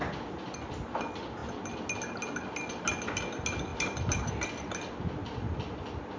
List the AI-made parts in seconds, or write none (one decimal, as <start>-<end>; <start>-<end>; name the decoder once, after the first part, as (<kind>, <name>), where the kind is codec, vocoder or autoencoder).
3.7-4.3 (vocoder, BigVGAN v2)